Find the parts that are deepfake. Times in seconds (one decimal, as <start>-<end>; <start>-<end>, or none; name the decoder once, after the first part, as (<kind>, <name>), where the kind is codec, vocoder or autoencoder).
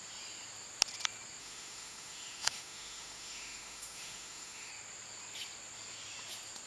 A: 1.4-4.7 (autoencoder, DAC-VAE)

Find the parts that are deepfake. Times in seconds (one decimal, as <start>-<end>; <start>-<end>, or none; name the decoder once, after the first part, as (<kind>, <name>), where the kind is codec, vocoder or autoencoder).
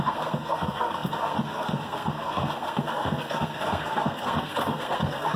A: 0.0-5.4 (codec, SNAC)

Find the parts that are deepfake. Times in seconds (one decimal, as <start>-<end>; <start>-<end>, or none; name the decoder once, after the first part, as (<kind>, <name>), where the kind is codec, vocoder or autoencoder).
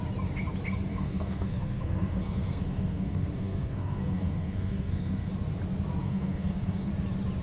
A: 0.9-5.3 (codec, SNAC); 6.0-6.9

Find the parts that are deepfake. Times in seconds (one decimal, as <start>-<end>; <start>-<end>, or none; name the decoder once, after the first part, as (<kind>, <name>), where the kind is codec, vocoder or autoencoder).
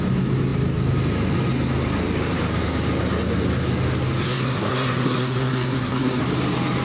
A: 4.2-6.2 (codec, SNAC)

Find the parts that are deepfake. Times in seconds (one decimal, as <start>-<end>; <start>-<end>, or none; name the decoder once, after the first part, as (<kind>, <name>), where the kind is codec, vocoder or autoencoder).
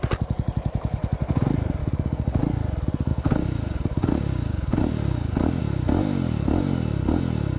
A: 1.8-2.4 (codec, DAC); 3.1-5.6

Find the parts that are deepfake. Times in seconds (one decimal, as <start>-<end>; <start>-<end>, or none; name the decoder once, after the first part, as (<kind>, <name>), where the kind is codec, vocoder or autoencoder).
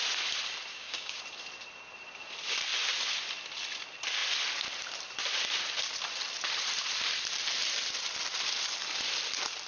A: 0.7-1.2 (codec, DAC)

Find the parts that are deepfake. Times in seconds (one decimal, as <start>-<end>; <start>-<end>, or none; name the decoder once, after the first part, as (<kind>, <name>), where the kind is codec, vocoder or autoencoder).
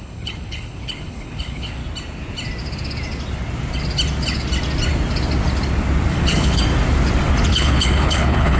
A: 0.0-1.8 (codec, HILCodec); 6.1-6.6; 7.5-8.6